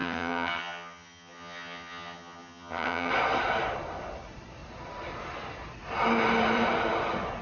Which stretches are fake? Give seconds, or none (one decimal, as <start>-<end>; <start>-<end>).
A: 0.0-3.1